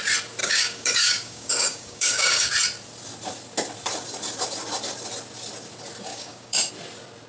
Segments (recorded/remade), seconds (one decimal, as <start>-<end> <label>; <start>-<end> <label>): 0.0-0.4 recorded; 0.4-2.5 remade; 2.5-6.1 recorded; 6.1-6.7 remade; 6.7-7.3 recorded